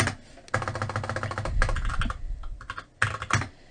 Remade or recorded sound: recorded